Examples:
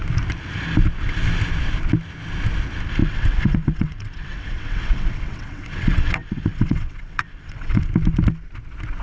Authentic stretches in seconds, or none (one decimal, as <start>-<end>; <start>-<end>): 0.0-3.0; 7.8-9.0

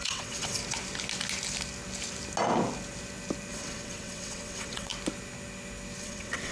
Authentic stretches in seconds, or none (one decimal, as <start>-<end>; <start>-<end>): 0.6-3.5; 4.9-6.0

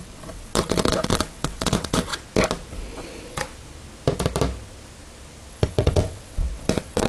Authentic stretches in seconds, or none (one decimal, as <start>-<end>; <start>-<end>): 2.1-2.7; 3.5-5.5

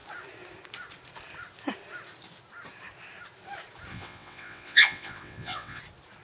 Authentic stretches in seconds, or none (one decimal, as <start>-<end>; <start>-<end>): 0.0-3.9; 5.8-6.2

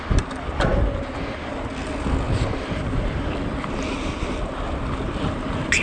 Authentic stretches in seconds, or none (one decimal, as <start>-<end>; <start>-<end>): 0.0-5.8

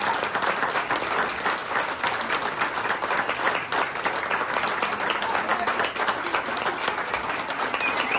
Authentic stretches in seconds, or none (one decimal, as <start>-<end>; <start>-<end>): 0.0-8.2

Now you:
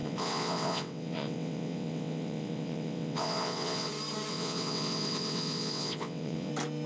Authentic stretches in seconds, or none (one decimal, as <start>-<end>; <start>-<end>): 3.9-4.3; 6.5-6.9

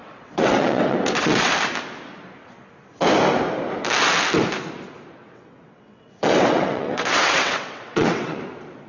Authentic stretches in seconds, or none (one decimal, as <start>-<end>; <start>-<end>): 1.5-5.2; 8.4-8.9